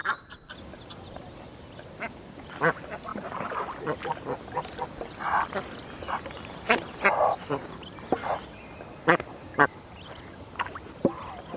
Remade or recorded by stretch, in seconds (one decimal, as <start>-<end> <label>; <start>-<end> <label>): 0.0-3.1 recorded; 3.1-3.8 remade; 3.8-9.5 recorded; 9.5-10.4 remade; 10.4-11.6 recorded